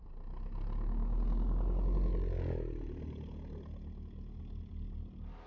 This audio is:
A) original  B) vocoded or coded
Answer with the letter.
A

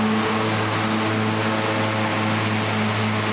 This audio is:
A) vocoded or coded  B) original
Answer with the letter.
B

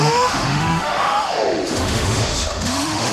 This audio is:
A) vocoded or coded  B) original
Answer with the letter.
A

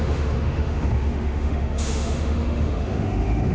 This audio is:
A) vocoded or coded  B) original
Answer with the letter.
A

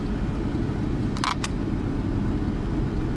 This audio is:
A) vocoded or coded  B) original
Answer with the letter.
B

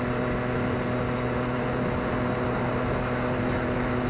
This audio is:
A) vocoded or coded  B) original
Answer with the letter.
B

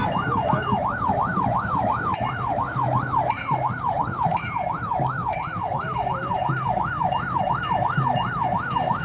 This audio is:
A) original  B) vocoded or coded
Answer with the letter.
B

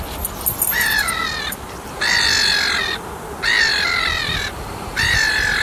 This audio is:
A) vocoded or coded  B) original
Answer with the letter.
B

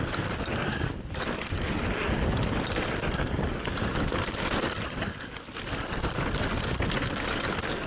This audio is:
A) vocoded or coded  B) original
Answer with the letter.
B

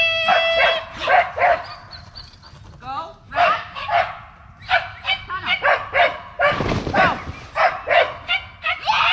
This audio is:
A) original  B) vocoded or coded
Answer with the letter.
A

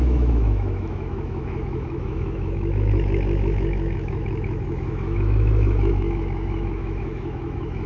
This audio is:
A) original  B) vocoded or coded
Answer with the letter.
B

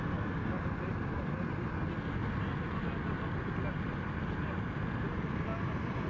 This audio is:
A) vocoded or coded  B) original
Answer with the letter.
B